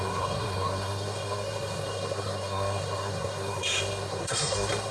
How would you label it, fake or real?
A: fake